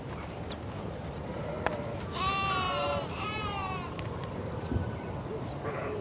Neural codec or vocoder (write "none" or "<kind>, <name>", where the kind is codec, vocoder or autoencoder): vocoder, BigVGAN v2